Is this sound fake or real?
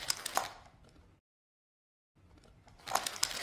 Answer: real